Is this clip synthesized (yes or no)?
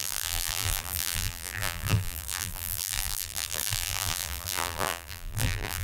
yes